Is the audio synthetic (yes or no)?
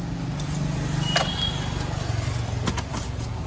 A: no